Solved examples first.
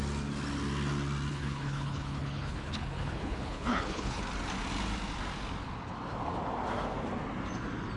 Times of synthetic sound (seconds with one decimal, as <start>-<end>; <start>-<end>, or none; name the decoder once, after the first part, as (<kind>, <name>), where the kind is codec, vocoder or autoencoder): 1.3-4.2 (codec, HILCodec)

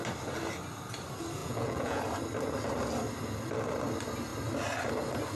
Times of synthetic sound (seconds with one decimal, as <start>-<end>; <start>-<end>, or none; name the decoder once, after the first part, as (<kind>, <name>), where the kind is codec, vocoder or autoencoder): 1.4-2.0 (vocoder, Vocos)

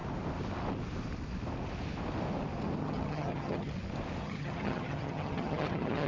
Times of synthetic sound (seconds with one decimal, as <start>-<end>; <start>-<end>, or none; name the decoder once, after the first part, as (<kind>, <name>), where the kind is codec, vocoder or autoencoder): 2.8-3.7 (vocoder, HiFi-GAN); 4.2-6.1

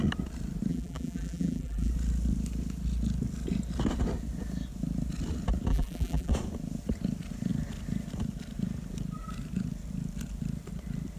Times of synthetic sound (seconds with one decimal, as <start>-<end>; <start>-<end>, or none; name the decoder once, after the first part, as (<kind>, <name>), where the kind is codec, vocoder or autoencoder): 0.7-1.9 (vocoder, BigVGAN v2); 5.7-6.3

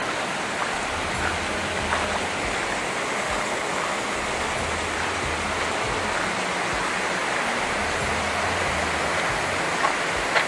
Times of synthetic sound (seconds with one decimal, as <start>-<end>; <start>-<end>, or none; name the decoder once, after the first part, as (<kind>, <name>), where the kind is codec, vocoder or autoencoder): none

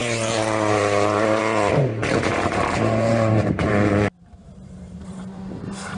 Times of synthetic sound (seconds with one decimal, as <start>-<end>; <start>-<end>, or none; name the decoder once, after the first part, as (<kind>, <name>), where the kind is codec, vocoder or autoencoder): 0.0-1.4 (vocoder, BigVGAN v2); 2.0-3.9; 4.4-6.0

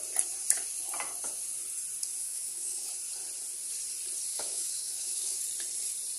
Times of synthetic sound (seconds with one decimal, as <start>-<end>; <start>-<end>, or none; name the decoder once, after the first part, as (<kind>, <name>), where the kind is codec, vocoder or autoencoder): 2.2-2.9 (codec, DAC); 4.3-5.4